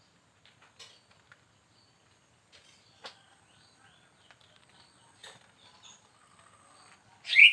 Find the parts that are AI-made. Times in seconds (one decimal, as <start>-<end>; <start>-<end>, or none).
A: none

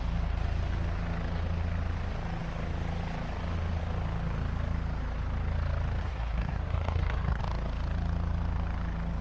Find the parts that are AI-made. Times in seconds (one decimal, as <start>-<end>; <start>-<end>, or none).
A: 6.0-7.4

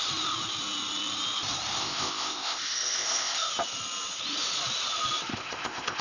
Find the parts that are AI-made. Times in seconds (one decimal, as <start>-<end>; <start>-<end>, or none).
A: 1.8-3.5; 5.3-6.0

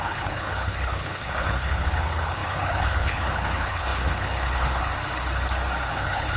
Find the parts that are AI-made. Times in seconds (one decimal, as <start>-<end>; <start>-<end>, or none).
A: 0.0-4.9; 5.9-6.4